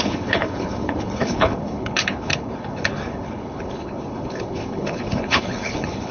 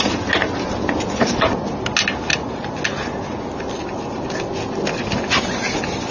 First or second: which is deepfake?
first